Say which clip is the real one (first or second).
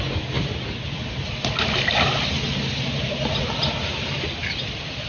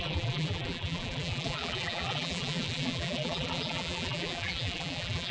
first